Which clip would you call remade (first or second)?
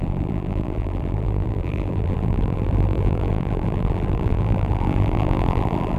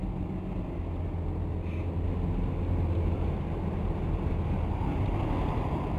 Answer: first